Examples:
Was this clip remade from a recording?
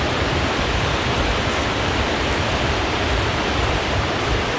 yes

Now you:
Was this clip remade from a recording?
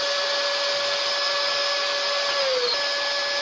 no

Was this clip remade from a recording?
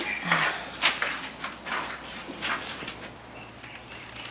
no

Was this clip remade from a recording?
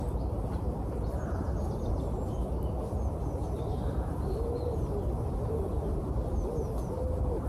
no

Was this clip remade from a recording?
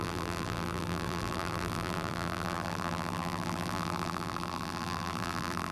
yes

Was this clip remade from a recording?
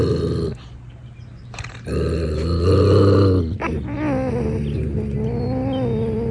no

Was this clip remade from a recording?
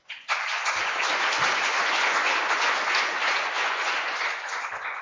yes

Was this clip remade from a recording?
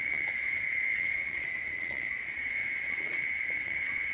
yes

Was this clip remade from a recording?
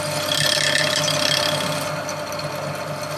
no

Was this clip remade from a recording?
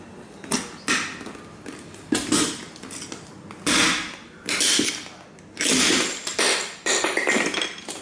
no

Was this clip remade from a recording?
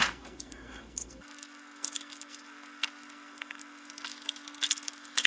yes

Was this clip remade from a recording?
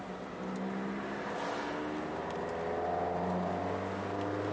no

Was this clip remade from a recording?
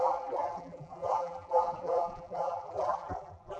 yes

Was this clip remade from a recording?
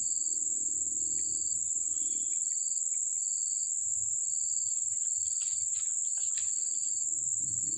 no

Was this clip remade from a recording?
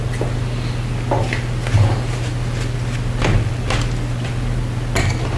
no